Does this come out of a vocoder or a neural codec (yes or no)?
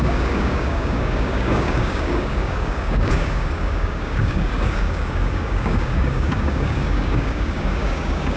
yes